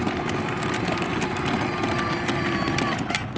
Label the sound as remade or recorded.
recorded